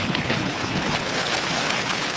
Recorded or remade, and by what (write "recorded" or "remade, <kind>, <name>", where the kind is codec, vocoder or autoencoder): remade, codec, HILCodec